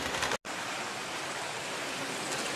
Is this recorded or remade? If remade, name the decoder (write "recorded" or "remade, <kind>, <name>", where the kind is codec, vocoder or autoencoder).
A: recorded